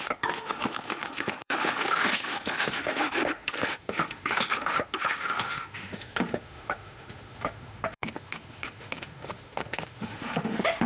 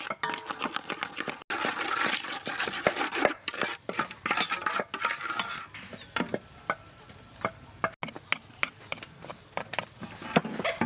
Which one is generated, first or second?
first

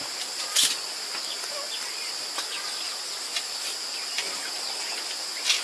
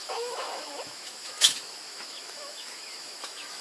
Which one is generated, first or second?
second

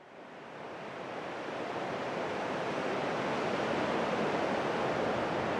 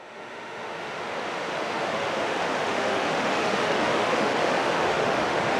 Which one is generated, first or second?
second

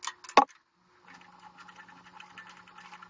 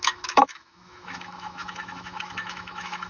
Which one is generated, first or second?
second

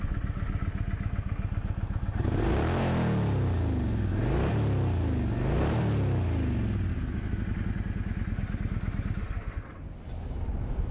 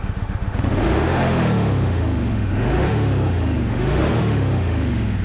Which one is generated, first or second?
second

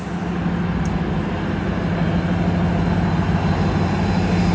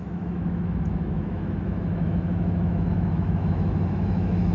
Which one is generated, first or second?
second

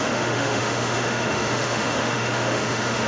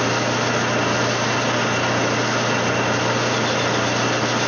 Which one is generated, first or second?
first